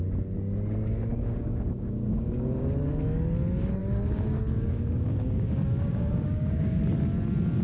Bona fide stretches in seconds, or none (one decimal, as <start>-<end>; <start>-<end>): 0.0-1.1; 2.6-3.8; 6.8-7.6